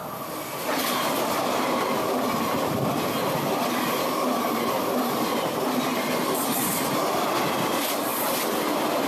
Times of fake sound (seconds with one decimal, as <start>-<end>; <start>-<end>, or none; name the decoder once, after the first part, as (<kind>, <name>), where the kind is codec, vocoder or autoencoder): none